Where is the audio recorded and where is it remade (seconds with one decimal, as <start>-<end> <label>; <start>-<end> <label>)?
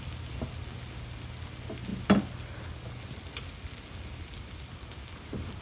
0.0-5.6 recorded